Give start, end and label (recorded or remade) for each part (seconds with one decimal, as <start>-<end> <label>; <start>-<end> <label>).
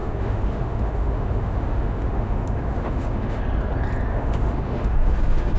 0.0-3.4 remade; 3.4-4.1 recorded; 4.1-5.6 remade